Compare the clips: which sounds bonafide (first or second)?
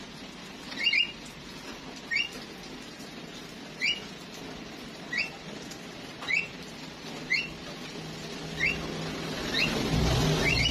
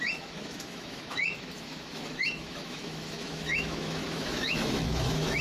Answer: first